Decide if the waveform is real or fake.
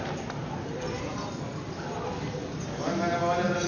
real